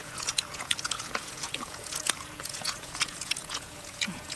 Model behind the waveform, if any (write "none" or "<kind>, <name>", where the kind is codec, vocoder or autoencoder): vocoder, Vocos